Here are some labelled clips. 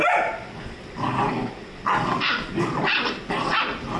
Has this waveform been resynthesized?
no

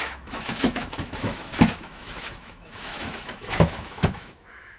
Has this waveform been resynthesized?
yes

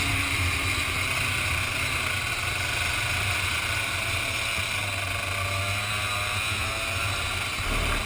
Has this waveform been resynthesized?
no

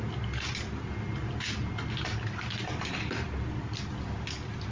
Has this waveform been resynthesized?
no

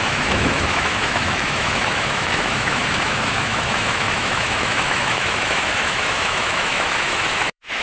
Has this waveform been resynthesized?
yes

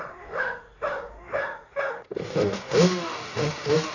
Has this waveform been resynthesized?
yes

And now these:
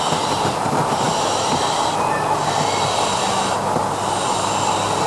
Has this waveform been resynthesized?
no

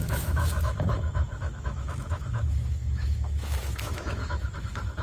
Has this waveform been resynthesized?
yes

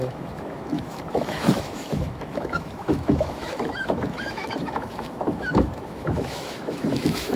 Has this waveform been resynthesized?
yes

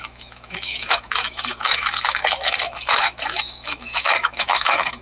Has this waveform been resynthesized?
yes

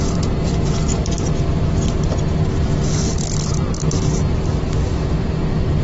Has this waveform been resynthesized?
no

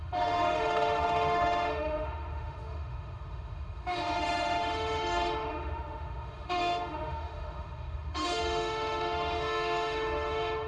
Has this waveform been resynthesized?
yes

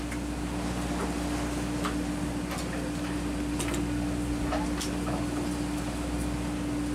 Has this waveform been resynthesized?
no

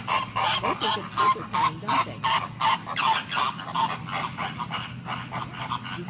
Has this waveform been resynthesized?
no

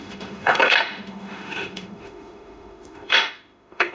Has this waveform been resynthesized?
yes